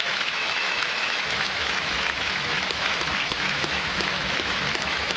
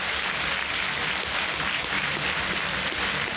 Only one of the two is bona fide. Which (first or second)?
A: second